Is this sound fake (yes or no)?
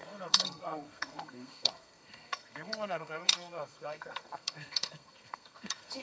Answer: yes